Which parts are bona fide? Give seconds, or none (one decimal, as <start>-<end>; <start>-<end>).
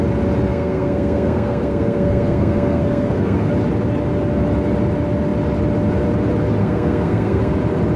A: 0.0-0.5; 3.5-6.6; 7.5-8.0